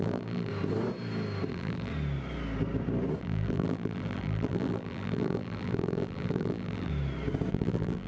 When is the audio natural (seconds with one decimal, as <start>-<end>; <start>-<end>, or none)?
0.5-1.5; 1.9-3.2; 6.9-7.5